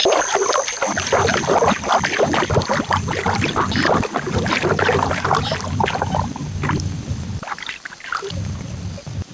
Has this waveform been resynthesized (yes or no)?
no